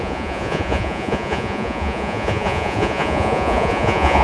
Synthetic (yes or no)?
yes